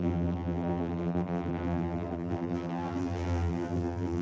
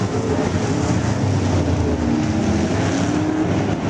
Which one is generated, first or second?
first